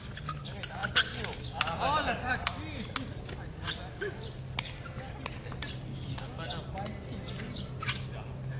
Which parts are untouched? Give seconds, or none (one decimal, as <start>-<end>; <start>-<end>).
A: 0.0-5.9; 6.5-8.6